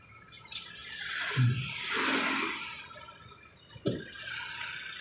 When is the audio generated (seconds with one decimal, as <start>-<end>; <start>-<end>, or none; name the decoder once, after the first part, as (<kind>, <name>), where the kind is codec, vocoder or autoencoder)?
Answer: 0.8-3.8 (vocoder, BigVGAN v2)